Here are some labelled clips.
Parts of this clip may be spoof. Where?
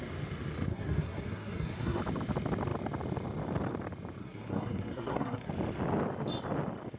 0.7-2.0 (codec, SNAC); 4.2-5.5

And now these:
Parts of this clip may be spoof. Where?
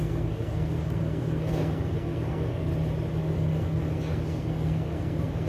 0.0-2.7 (codec, SNAC); 3.2-5.5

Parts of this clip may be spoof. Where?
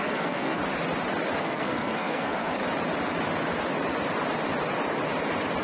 0.0-0.6 (codec, SNAC); 1.4-2.6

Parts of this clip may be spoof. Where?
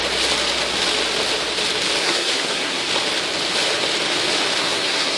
2.0-2.8 (codec, SNAC); 4.6-5.2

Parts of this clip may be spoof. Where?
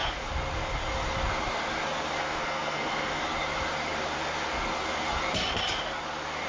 2.2-3.2 (codec, SNAC)